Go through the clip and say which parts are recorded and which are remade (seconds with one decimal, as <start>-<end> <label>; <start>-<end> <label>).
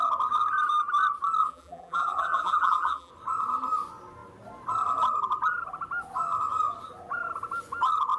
0.0-1.4 recorded; 1.4-3.1 remade; 3.1-8.2 recorded